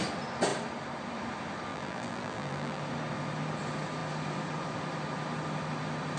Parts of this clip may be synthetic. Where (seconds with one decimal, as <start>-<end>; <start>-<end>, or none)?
1.7-2.8